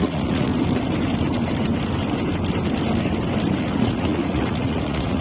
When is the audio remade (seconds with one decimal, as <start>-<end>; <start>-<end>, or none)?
0.0-0.5; 3.6-5.2